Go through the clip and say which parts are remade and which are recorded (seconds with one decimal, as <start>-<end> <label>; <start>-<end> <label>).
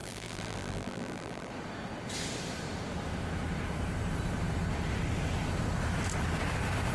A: 0.0-1.5 remade; 1.5-6.9 recorded